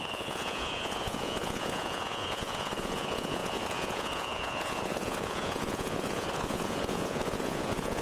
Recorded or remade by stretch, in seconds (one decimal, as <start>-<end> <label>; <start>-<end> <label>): 0.0-8.0 remade